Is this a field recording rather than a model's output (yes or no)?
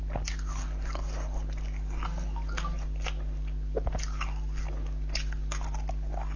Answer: yes